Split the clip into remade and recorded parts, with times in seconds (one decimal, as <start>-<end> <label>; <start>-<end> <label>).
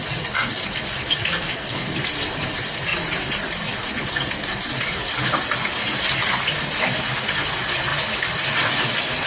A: 0.0-1.3 recorded; 1.3-1.9 remade; 1.9-9.3 recorded